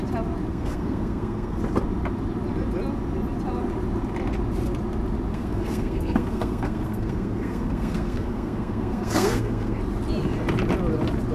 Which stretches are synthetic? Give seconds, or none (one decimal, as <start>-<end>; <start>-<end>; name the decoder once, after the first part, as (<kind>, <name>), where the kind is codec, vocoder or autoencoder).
0.5-1.6 (codec, SNAC); 5.3-9.8